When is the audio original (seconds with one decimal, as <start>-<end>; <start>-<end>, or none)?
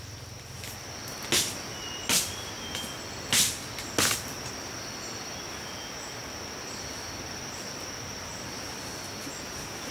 0.0-9.9